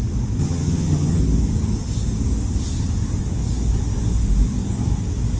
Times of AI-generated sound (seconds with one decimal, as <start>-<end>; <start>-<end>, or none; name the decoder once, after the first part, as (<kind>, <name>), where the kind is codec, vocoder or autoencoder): 0.4-1.2 (vocoder, HiFi-GAN)